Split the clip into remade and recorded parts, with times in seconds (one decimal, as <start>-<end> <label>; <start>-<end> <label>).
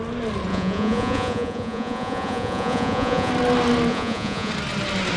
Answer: 0.0-0.5 recorded; 0.5-3.3 remade; 3.3-3.9 recorded; 3.9-4.5 remade; 4.5-5.2 recorded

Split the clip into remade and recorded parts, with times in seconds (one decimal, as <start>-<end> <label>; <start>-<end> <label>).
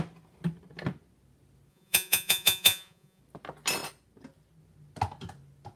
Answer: 0.0-1.7 recorded; 1.7-3.2 remade; 3.2-5.8 recorded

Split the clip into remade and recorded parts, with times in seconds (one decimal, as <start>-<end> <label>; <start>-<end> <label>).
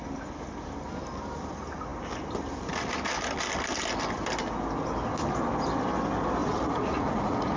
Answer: 0.0-6.4 recorded; 6.4-7.6 remade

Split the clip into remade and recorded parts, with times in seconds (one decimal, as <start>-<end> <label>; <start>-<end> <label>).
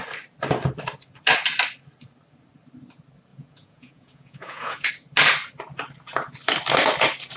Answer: 0.0-3.3 recorded; 3.3-4.9 remade; 4.9-7.4 recorded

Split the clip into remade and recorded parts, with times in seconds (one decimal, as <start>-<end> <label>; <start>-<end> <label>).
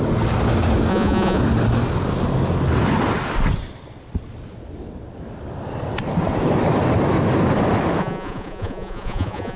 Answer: 0.0-0.9 recorded; 0.9-1.4 remade; 1.4-8.0 recorded; 8.0-9.6 remade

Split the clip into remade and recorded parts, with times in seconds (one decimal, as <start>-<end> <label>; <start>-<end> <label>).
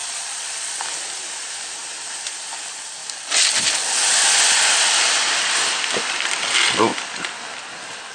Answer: 0.0-0.8 remade; 0.8-8.1 recorded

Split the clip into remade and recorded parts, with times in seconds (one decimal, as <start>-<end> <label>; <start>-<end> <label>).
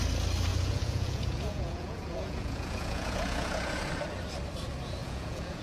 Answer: 0.0-0.5 recorded; 0.5-3.9 remade; 3.9-5.0 recorded; 5.0-5.6 remade